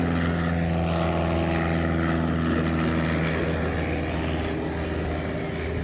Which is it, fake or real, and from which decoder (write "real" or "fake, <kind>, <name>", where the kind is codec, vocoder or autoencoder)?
real